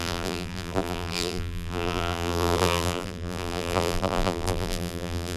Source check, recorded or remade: remade